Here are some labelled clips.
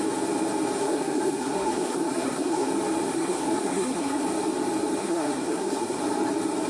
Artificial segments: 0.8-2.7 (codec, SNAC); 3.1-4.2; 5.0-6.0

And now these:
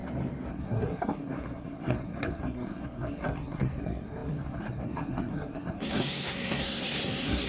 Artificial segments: 0.5-7.5 (codec, SNAC)

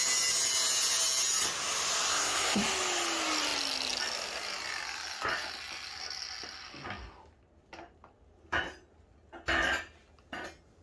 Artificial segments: 2.1-2.6 (codec, SNAC)

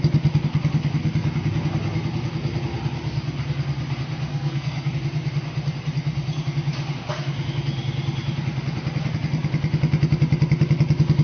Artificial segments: 4.3-4.9 (codec, SNAC)

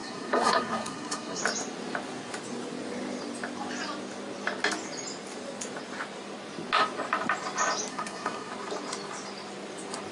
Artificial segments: 0.0-1.4 (codec, SNAC); 7.9-8.5

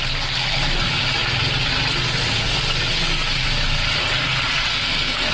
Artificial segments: 4.7-5.3 (codec, SNAC)